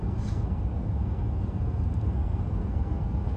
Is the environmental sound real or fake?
fake